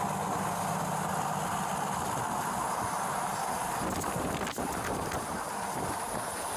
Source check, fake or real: real